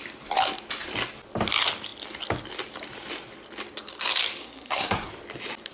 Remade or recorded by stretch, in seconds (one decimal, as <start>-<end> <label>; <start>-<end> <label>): 0.0-4.4 recorded; 4.4-5.1 remade; 5.1-5.7 recorded

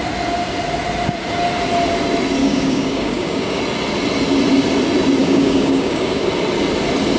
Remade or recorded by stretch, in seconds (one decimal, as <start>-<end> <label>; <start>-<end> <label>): 0.0-2.4 recorded; 2.4-3.6 remade; 3.6-5.2 recorded; 5.2-6.2 remade; 6.2-7.2 recorded

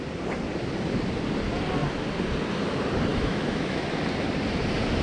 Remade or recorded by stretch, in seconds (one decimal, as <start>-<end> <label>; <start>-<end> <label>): 0.0-3.1 recorded; 3.1-4.0 remade; 4.0-5.0 recorded

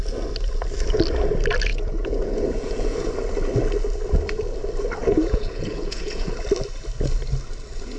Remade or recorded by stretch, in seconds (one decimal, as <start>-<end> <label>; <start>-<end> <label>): 0.0-1.7 recorded; 1.7-3.1 remade; 3.1-5.0 recorded; 5.0-6.3 remade; 6.3-8.0 recorded

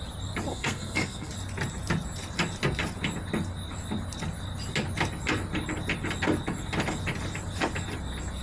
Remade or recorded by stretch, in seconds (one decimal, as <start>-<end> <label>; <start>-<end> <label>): 0.0-0.5 recorded; 0.5-1.3 remade; 1.3-8.4 recorded

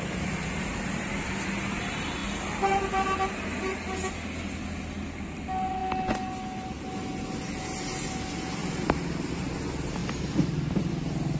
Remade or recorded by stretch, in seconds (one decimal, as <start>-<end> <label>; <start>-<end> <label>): 0.0-8.6 recorded; 8.6-9.3 remade; 9.3-10.0 recorded; 10.0-10.9 remade; 10.9-11.4 recorded